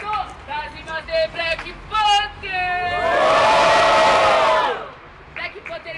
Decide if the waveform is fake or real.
fake